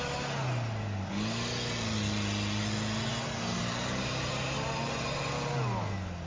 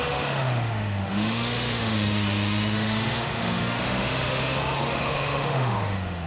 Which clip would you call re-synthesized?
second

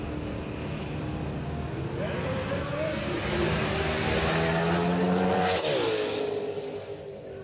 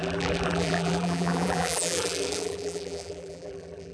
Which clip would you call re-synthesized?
second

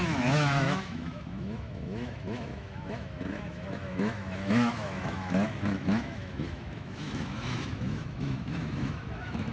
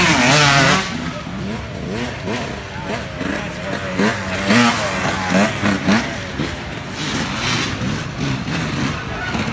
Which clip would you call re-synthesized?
first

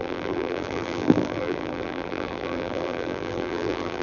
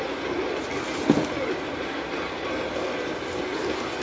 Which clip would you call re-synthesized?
first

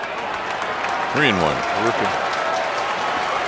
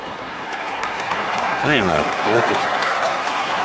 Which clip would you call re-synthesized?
second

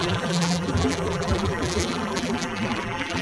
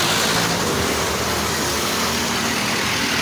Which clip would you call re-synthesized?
first